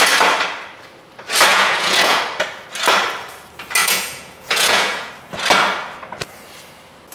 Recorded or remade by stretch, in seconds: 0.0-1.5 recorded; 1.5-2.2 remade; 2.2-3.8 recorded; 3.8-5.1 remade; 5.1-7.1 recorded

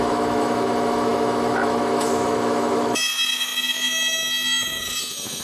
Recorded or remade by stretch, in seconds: 0.0-5.4 remade